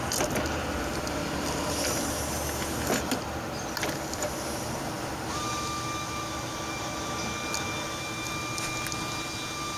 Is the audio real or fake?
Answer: real